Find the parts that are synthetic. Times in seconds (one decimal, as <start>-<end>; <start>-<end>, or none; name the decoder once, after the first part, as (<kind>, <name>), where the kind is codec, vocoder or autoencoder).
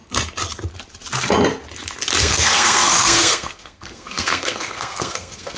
2.2-5.6 (codec, SNAC)